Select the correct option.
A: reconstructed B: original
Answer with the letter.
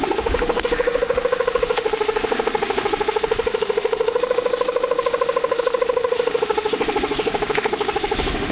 A